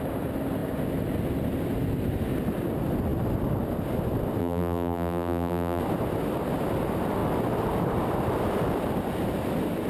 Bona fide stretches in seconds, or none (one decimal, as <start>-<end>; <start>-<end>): 0.0-4.4; 5.8-9.9